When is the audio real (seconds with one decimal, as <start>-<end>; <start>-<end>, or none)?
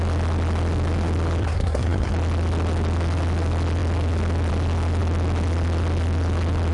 0.0-1.4; 2.1-6.7